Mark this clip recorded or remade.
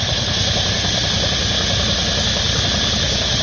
recorded